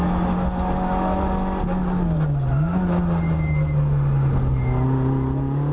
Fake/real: real